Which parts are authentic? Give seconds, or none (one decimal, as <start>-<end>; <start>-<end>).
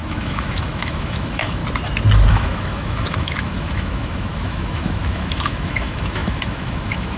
1.6-2.3